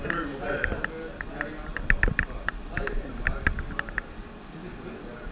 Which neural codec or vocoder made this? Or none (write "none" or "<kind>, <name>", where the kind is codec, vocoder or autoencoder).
none